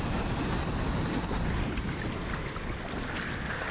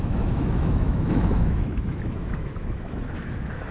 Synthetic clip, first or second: second